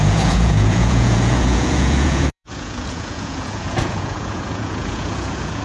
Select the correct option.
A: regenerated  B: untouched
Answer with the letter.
A